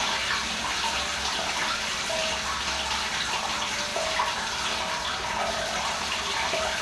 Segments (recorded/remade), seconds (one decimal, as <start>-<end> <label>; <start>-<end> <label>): 0.0-2.2 remade; 2.2-3.5 recorded; 3.5-3.9 remade; 3.9-5.4 recorded; 5.4-6.8 remade